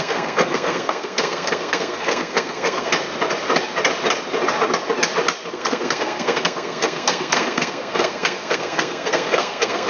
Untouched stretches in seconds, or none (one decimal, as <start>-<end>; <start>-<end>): 2.9-5.5